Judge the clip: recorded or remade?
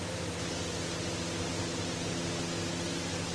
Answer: recorded